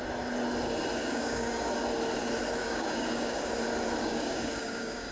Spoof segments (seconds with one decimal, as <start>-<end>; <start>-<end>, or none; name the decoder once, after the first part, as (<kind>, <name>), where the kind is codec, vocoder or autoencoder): 1.0-1.7 (codec, DAC); 2.6-3.5; 4.0-5.1